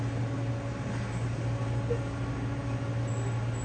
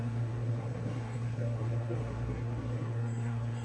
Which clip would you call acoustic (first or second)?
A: first